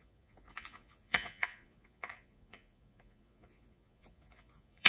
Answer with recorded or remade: remade